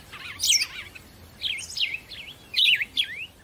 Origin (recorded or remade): recorded